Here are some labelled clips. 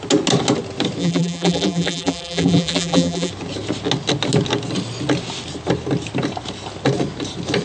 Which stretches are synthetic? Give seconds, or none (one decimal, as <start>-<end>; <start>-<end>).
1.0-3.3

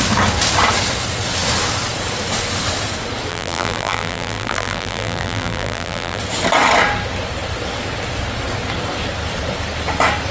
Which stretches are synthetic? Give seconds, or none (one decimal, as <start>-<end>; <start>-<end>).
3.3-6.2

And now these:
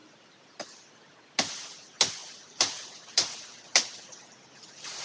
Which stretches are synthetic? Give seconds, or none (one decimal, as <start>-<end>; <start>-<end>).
0.0-0.9

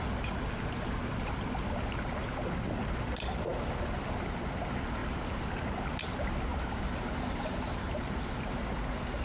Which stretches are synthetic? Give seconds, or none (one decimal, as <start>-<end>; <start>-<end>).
5.0-5.5; 6.5-8.0

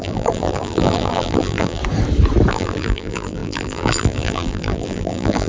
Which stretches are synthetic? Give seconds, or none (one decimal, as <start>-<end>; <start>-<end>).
0.0-1.8; 2.5-5.5

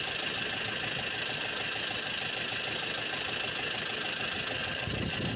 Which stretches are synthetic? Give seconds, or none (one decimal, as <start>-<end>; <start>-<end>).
4.6-5.4

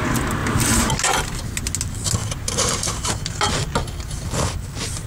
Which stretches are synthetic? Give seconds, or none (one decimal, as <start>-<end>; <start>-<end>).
2.2-3.1

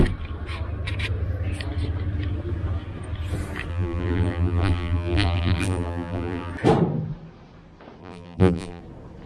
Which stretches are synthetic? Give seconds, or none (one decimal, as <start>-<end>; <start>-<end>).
3.7-6.5; 8.0-8.8